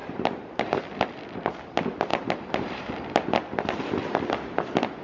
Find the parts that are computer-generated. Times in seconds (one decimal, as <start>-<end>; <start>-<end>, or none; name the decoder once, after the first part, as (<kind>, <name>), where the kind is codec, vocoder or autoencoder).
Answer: 0.0-0.8 (vocoder, BigVGAN v2); 2.1-2.9